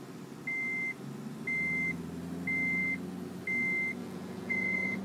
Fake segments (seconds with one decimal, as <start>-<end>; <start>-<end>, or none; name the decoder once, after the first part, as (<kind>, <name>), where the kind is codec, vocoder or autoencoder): 4.0-5.0 (vocoder, Vocos)